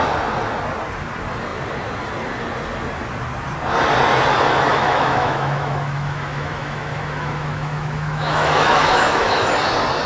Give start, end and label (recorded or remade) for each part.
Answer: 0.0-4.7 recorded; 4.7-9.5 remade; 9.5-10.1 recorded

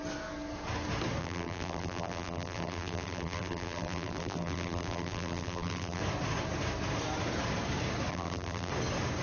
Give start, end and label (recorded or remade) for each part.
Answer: 0.0-1.2 recorded; 1.2-6.0 remade; 6.0-8.1 recorded; 8.1-8.7 remade; 8.7-9.2 recorded